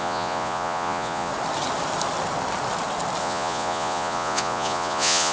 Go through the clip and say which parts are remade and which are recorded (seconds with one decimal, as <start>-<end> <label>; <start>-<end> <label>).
0.0-1.3 remade; 1.3-3.2 recorded; 3.2-5.3 remade